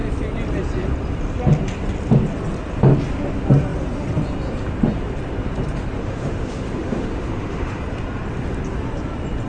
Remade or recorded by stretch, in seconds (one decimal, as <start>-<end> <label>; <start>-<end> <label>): 0.0-6.0 recorded; 6.0-7.8 remade; 7.8-9.5 recorded